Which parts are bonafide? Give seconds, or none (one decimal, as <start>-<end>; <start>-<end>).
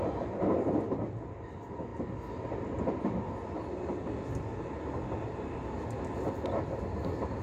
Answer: 0.0-7.4